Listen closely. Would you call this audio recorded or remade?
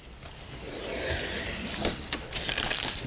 remade